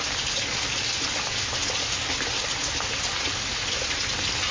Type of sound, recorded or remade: recorded